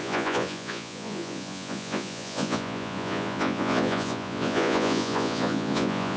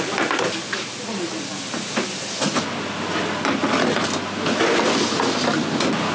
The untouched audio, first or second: second